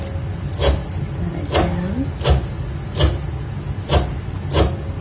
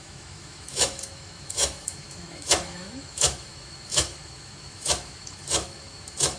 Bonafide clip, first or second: first